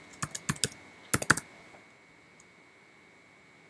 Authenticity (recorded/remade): recorded